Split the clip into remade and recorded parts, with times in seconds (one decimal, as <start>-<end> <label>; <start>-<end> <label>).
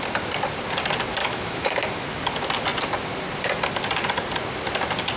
0.0-1.2 recorded; 1.2-2.2 remade; 2.2-5.2 recorded